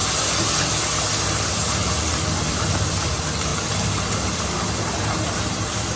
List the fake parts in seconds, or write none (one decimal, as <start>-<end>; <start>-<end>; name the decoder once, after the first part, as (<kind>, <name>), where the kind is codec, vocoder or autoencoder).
0.0-6.0 (vocoder, BigVGAN v2)